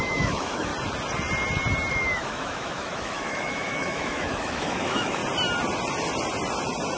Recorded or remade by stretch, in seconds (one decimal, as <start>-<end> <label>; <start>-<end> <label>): 0.0-0.7 remade; 0.7-1.9 recorded; 1.9-5.2 remade; 5.2-7.0 recorded